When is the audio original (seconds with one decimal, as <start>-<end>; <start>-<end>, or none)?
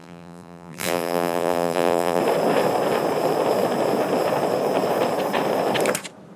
2.2-6.4